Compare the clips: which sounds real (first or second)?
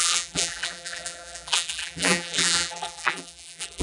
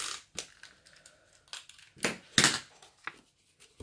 second